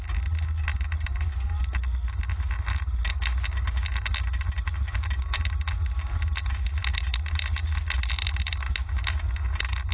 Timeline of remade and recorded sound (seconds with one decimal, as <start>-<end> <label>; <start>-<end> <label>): 0.0-9.9 recorded